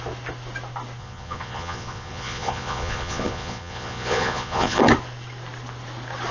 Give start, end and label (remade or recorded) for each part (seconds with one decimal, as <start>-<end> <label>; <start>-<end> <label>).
0.0-1.0 recorded; 1.0-4.8 remade; 4.8-6.3 recorded